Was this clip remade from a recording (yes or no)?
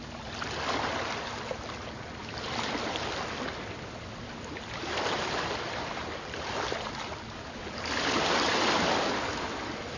no